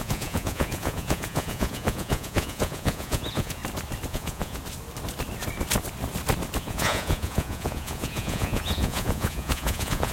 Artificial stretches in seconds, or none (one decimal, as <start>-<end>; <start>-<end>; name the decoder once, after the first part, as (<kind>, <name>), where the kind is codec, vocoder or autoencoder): 0.0-3.6 (vocoder, Vocos); 4.1-4.6; 6.6-10.1